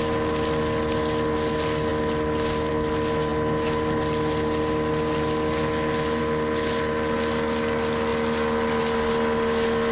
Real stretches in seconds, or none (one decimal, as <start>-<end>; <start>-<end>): 0.0-9.9